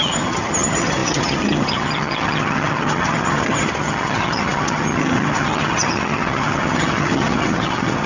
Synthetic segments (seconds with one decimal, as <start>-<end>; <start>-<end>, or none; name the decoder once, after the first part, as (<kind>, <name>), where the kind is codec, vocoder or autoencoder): 0.0-8.1 (vocoder, HiFi-GAN)